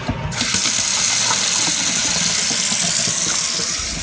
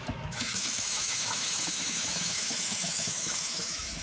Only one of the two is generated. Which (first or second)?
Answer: second